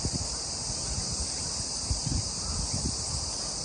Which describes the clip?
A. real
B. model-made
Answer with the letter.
A